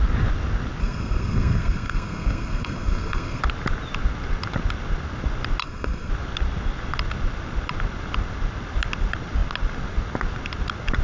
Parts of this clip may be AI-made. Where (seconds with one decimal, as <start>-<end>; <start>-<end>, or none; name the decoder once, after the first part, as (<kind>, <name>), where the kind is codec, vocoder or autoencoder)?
0.8-3.4 (codec, SNAC); 5.6-6.1